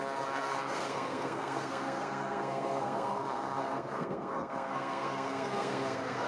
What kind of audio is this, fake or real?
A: fake